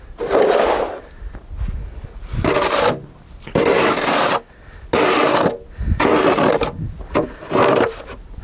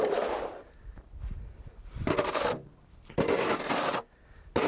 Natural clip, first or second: first